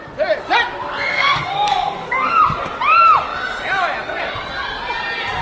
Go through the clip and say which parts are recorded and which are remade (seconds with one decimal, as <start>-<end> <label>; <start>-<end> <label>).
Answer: 0.0-1.1 recorded; 1.1-2.3 remade; 2.3-5.4 recorded